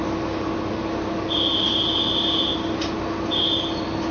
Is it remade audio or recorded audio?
recorded